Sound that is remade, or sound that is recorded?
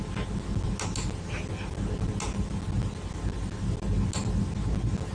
recorded